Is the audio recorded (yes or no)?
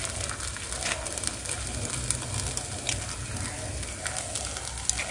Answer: yes